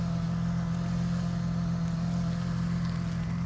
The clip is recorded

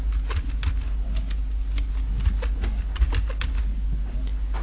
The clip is recorded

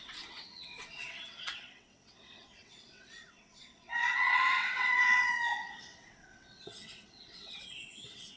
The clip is remade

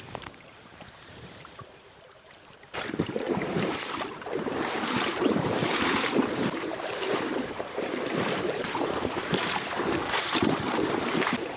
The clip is remade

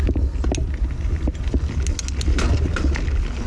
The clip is recorded